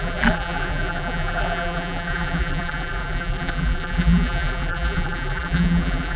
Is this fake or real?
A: fake